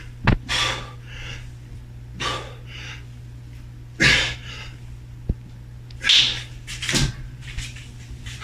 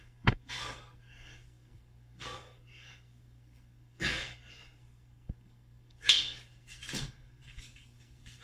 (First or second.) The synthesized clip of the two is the second